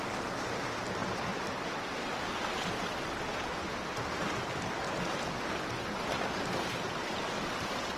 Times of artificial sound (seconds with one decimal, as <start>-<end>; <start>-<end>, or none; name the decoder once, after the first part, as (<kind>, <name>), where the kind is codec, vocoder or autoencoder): none